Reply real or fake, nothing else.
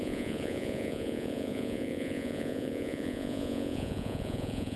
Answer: fake